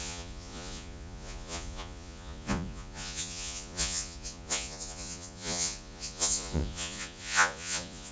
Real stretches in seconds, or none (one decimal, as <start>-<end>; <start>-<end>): none